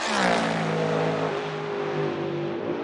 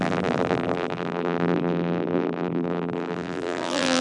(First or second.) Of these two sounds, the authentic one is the first